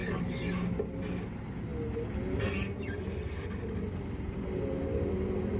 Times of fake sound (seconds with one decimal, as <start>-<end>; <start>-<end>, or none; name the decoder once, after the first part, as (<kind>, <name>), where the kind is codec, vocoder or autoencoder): none